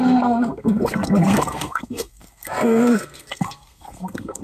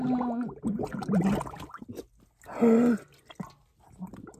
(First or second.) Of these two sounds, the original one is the second